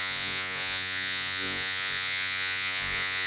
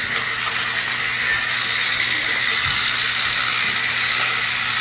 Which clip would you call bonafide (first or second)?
second